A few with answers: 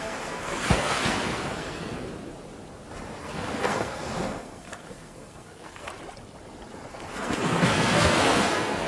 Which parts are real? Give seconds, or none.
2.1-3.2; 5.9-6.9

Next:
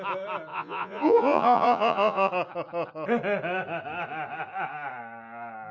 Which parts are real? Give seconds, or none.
0.0-0.5; 2.3-5.7

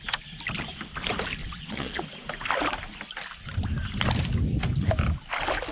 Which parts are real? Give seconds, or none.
0.0-1.4; 2.0-5.7

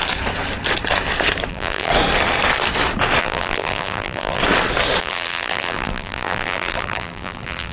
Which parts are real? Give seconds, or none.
0.0-1.5; 1.9-3.2; 4.4-5.0

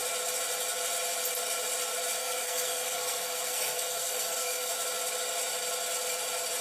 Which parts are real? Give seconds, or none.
0.0-2.2; 4.7-6.6